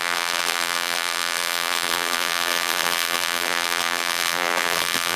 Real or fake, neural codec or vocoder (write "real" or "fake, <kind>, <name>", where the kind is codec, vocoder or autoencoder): fake, vocoder, BigVGAN v2